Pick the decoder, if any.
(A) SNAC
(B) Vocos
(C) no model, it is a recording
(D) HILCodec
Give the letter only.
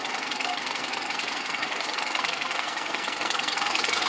A